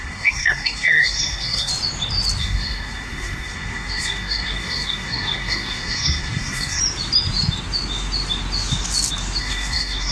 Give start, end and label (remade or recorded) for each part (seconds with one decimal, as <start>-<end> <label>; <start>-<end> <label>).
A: 0.0-1.7 remade; 1.7-2.4 recorded; 2.4-6.8 remade; 6.8-9.4 recorded; 9.4-10.1 remade